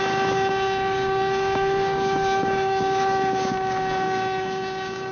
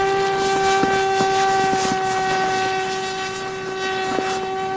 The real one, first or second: second